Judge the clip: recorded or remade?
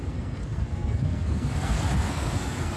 remade